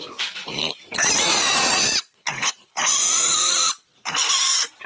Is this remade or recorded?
remade